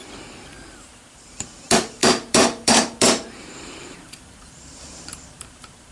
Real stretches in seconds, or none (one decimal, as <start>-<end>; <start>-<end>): none